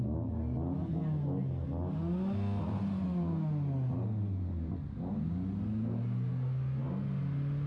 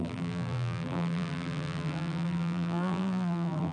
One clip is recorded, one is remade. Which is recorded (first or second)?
first